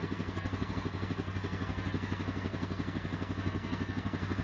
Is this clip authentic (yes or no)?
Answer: no